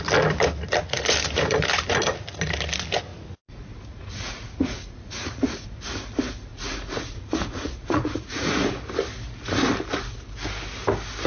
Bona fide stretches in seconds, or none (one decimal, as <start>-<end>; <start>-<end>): 0.0-3.1; 5.7-6.5; 8.8-11.3